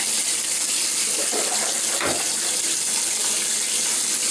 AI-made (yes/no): no